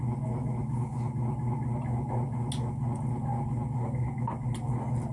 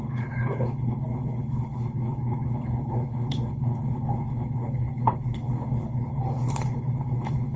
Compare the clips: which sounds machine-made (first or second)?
second